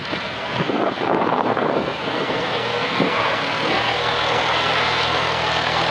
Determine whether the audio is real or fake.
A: fake